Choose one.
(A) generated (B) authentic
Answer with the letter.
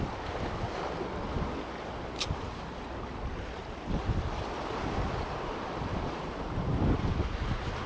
B